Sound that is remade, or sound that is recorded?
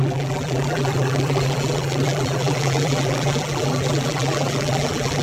remade